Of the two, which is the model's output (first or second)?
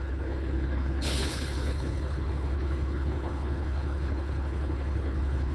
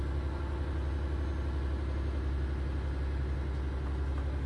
first